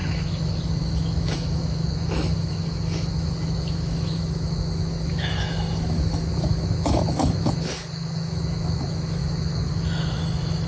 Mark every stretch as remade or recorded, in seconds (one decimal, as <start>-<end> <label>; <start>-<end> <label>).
0.0-10.7 remade